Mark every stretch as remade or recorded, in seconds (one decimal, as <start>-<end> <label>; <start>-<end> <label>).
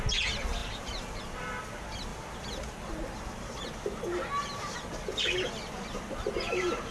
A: 0.0-6.9 recorded